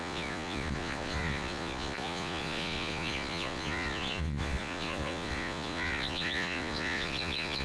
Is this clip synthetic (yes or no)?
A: yes